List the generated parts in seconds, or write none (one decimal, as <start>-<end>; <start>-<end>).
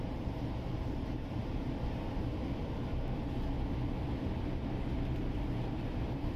0.0-1.4; 5.2-6.4